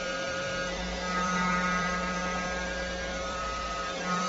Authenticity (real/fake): fake